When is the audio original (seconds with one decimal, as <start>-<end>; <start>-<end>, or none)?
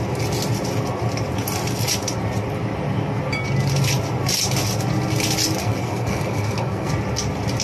0.0-5.6; 6.9-7.6